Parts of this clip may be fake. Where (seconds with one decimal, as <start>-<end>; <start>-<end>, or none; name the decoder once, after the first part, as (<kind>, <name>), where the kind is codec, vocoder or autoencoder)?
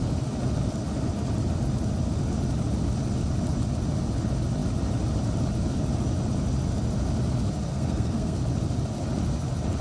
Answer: 7.7-8.4 (codec, SNAC)